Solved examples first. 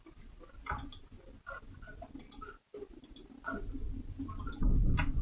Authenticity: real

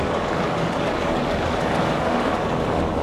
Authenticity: fake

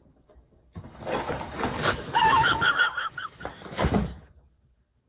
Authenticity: fake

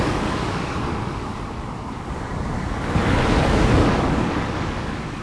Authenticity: fake